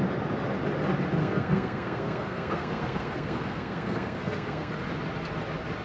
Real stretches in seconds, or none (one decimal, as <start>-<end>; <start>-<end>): 0.0-1.2; 4.7-5.8